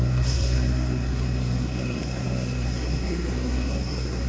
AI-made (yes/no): yes